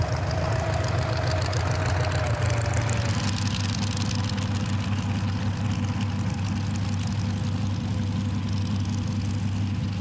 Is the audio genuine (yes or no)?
yes